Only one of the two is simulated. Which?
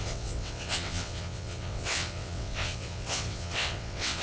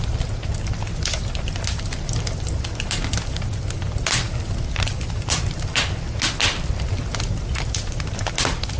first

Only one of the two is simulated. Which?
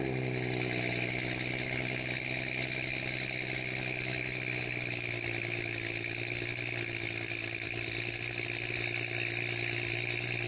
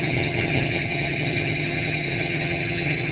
second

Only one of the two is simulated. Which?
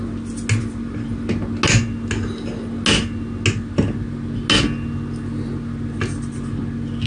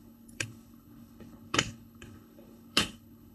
second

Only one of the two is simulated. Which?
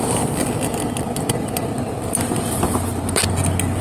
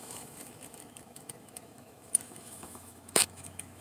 second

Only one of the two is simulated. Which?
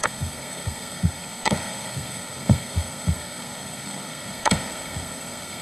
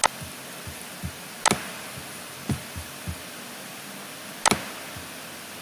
first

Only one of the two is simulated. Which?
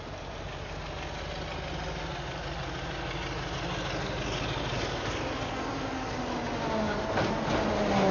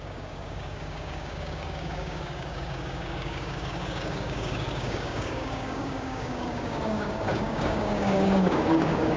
second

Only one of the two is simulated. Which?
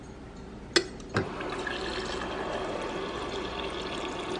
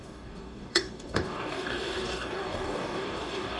second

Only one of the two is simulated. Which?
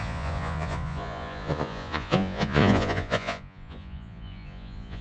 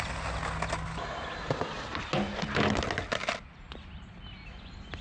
first